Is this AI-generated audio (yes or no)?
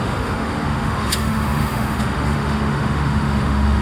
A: yes